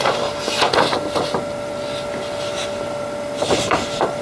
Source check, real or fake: real